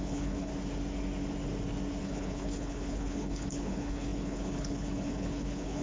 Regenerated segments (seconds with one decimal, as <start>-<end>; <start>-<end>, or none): 0.0-0.5; 2.0-5.8